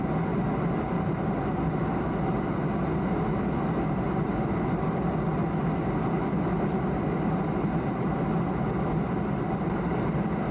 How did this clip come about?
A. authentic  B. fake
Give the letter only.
A